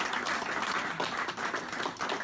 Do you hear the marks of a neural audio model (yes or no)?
no